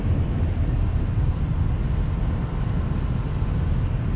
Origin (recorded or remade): recorded